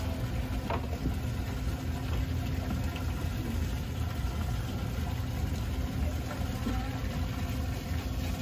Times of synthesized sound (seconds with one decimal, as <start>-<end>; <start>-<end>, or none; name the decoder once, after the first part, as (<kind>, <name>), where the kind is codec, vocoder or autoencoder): 7.0-7.9 (vocoder, BigVGAN v2)